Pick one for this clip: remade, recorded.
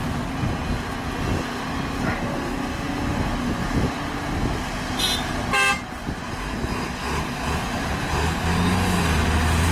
recorded